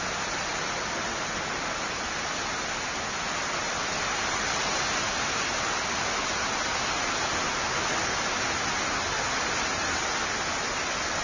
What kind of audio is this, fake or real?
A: real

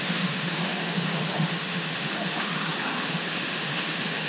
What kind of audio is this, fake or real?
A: fake